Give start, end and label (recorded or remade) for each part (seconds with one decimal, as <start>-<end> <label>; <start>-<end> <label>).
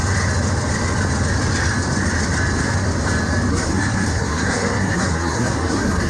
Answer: 0.0-3.5 recorded; 3.5-6.1 remade